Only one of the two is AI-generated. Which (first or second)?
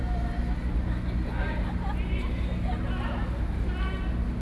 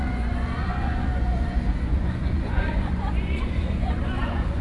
second